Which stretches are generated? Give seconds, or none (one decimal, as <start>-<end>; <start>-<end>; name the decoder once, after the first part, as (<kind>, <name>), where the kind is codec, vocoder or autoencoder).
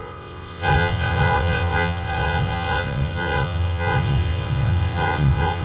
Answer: 0.0-5.6 (vocoder, WaveNeXt)